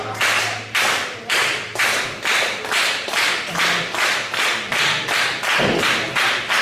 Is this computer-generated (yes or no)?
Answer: no